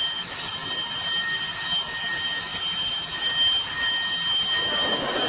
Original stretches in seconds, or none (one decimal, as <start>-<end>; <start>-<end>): 0.0-5.3